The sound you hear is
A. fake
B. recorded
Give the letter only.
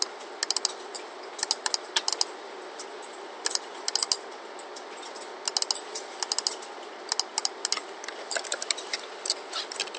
B